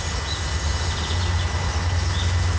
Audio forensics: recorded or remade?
recorded